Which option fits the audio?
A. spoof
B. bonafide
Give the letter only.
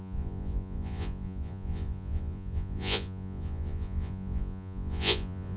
A